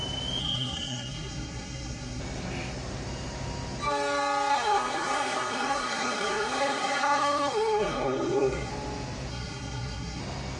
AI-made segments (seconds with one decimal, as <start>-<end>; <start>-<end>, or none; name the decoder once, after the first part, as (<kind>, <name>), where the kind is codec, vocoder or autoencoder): 0.4-2.2 (codec, SNAC); 4.5-8.7; 9.3-10.2